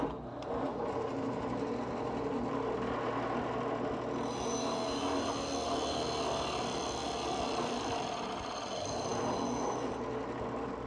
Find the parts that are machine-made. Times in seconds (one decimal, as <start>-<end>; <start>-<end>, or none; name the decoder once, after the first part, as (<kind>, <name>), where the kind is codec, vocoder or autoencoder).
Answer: none